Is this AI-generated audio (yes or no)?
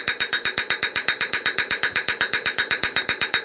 yes